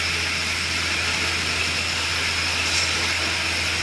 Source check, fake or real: real